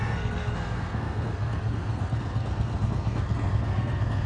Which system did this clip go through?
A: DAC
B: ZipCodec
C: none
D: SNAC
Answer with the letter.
D